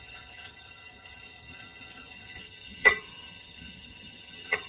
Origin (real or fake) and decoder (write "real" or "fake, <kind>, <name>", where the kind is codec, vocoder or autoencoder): fake, vocoder, HiFi-GAN